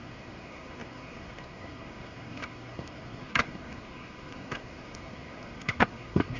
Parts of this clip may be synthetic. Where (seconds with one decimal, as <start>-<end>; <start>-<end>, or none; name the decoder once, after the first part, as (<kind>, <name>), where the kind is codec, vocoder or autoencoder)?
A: 0.0-6.4 (codec, SNAC)